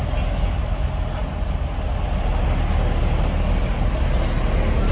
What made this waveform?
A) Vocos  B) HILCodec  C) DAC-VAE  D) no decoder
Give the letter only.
D